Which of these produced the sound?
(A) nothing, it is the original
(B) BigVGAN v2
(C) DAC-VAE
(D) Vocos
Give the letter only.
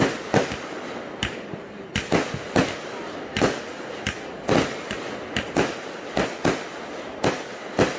A